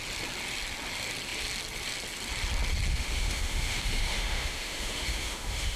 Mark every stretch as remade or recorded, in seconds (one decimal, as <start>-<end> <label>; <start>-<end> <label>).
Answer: 0.0-2.9 recorded; 2.9-5.8 remade